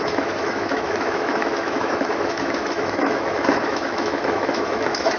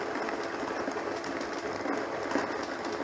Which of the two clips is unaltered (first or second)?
second